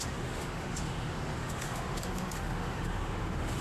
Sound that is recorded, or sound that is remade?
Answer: remade